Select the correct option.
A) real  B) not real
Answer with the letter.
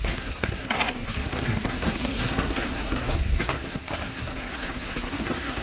B